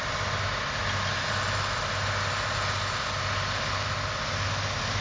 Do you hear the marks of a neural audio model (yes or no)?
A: no